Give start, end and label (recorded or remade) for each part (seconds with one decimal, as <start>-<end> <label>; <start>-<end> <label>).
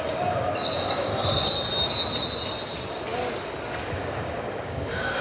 0.0-1.1 remade; 1.1-3.8 recorded; 3.8-5.2 remade